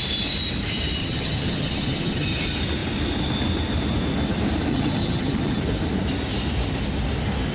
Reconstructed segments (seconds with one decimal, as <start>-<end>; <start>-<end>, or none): 1.0-2.4; 4.7-5.6